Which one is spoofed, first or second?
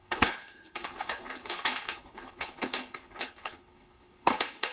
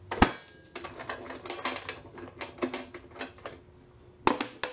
first